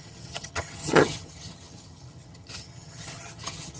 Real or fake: fake